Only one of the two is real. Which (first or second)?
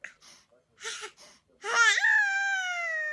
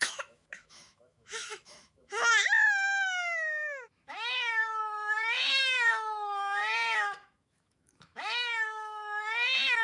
first